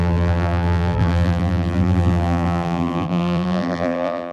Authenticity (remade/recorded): remade